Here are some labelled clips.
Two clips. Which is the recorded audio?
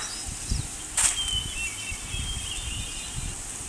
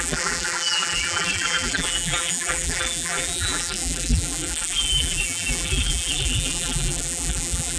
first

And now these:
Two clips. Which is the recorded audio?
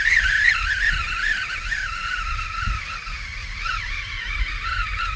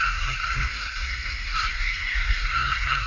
first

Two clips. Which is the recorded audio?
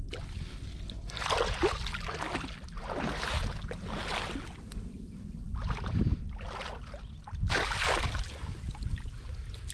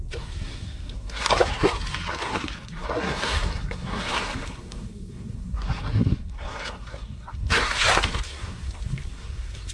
first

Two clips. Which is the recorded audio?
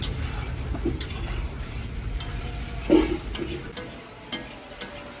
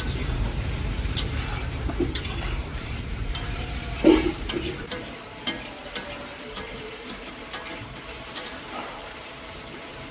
first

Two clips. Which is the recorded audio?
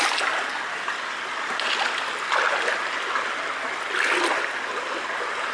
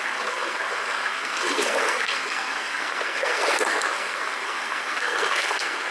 first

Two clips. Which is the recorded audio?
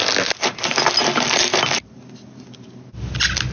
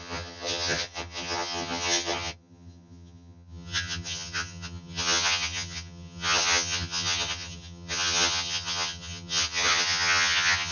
first